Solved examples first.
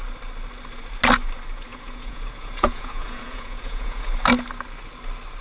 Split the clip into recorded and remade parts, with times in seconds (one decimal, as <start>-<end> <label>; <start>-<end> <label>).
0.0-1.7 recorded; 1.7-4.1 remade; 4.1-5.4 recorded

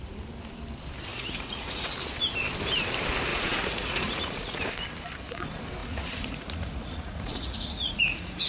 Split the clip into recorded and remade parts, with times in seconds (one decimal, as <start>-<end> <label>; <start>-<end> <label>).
0.0-1.1 recorded; 1.1-1.9 remade; 1.9-3.3 recorded; 3.3-4.6 remade; 4.6-5.8 recorded; 5.8-8.5 remade

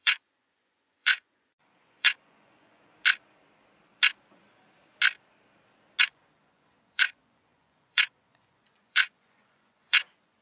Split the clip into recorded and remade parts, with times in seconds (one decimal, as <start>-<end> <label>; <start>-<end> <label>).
0.0-2.9 remade; 2.9-6.0 recorded; 6.0-10.4 remade